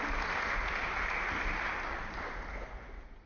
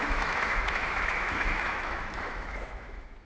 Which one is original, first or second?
first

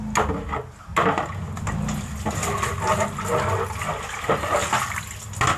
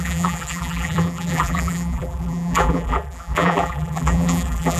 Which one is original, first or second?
first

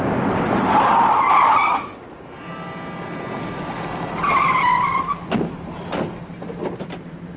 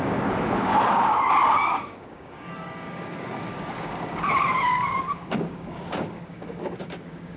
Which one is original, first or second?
first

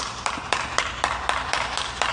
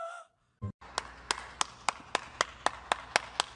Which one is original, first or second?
second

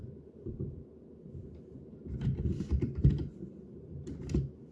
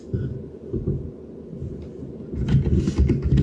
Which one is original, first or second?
second